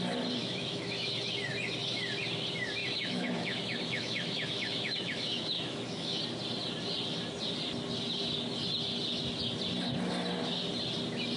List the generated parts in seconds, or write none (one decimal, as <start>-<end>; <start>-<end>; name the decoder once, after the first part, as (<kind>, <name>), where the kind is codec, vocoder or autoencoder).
0.4-1.2 (autoencoder, DAC-VAE); 2.8-6.2